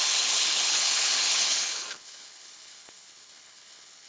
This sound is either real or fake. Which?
fake